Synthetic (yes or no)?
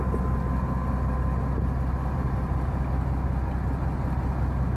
no